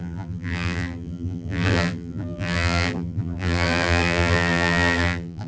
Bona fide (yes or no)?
no